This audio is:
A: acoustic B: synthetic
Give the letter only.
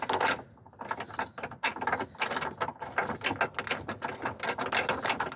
A